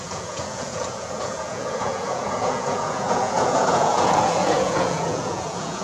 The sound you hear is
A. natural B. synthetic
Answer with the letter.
B